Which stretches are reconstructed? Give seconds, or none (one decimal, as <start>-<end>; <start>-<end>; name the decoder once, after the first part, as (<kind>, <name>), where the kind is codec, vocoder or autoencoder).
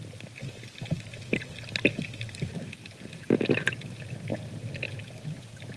none